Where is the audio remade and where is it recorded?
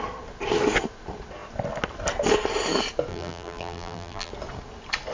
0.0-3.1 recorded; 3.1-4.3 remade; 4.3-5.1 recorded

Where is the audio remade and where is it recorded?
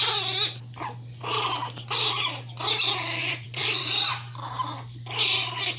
0.0-3.2 recorded; 3.2-3.9 remade; 3.9-5.8 recorded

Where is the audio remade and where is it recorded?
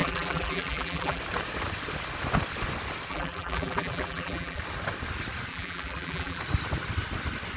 0.0-1.2 remade; 1.2-3.1 recorded; 3.1-4.6 remade; 4.6-5.5 recorded; 5.5-6.4 remade; 6.4-7.6 recorded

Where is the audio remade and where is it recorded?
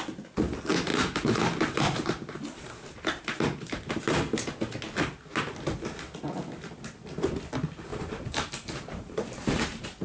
0.0-0.9 recorded; 0.9-4.0 remade; 4.0-7.9 recorded; 7.9-10.0 remade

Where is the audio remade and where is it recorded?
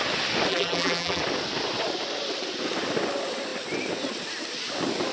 0.0-0.5 recorded; 0.5-1.2 remade; 1.2-5.1 recorded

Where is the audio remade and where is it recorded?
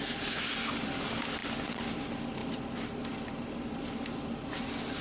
0.0-5.0 recorded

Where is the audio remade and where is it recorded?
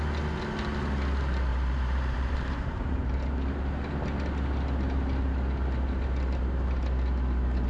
0.0-1.5 recorded; 1.5-3.9 remade; 3.9-7.7 recorded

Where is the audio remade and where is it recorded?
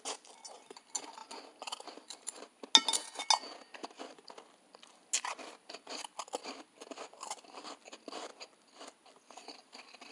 0.0-10.1 recorded